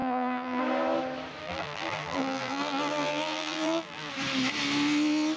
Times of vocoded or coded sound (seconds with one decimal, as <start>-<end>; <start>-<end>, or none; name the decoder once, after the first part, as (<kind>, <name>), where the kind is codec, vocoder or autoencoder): 0.0-0.6 (vocoder, BigVGAN v2); 1.4-4.1